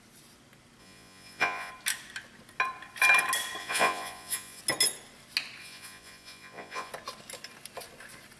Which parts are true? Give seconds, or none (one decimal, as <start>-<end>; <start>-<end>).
0.0-0.8; 1.7-3.6; 4.6-5.6; 6.9-8.4